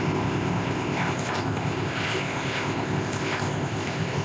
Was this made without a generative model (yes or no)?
no